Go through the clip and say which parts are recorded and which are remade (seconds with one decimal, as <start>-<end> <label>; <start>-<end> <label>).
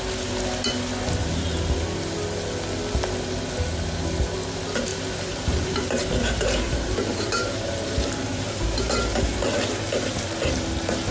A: 0.0-4.9 recorded; 4.9-9.9 remade; 9.9-11.1 recorded